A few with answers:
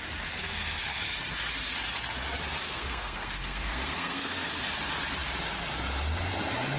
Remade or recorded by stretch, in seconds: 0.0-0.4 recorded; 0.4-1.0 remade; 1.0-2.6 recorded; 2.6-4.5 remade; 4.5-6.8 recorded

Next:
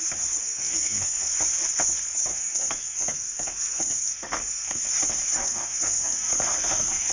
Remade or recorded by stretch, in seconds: 0.0-0.4 recorded; 0.4-1.3 remade; 1.3-2.3 recorded; 2.3-4.8 remade; 4.8-5.4 recorded; 5.4-7.1 remade

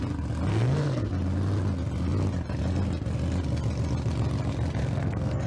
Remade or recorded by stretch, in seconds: 0.0-0.5 recorded; 0.5-1.0 remade; 1.0-4.8 recorded; 4.8-5.5 remade

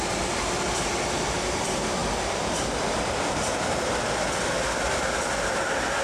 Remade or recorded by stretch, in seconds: 0.0-6.0 recorded

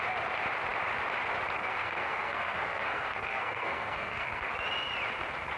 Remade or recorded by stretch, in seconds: 0.0-1.6 recorded; 1.6-4.5 remade; 4.5-5.6 recorded

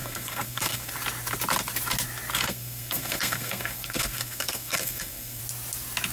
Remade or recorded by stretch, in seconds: 0.0-0.9 remade; 0.9-2.3 recorded; 2.3-5.4 remade; 5.4-6.1 recorded